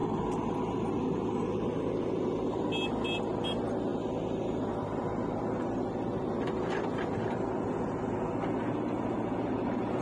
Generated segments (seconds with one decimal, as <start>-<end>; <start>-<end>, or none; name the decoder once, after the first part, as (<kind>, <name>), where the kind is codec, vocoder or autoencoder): none